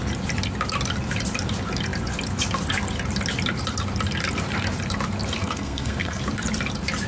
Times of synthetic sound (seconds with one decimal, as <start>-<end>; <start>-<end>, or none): 5.4-6.2